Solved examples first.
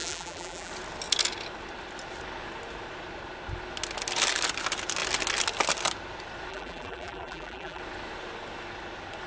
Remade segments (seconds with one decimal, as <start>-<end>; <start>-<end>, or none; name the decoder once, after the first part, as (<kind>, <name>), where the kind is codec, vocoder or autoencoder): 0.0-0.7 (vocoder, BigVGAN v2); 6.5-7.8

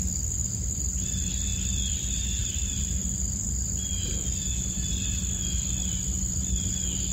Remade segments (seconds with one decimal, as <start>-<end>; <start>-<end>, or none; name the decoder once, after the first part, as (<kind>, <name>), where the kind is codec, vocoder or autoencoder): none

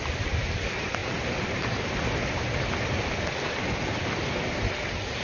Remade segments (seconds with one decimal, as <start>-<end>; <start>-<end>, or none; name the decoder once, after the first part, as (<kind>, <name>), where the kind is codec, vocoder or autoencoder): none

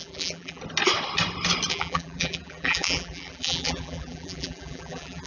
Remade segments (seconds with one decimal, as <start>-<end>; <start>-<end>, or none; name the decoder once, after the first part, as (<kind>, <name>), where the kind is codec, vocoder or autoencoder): 0.0-0.6 (vocoder, BigVGAN v2); 1.7-5.3

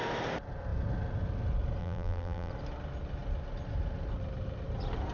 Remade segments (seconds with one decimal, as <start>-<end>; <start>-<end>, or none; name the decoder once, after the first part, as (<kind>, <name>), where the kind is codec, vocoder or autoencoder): 1.8-2.5 (vocoder, BigVGAN v2)

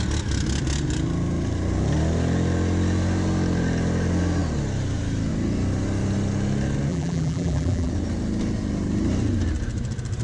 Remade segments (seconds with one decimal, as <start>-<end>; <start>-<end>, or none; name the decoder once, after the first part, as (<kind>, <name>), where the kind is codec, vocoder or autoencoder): 6.9-7.9 (vocoder, BigVGAN v2)

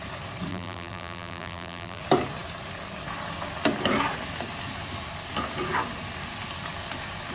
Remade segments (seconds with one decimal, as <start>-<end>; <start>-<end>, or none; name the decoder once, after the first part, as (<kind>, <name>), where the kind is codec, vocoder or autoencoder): 0.5-2.0 (vocoder, BigVGAN v2)